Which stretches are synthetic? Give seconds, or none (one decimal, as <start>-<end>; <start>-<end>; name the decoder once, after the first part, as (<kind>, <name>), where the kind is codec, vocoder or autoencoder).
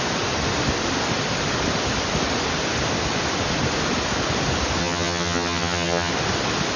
4.8-6.1 (vocoder, HiFi-GAN)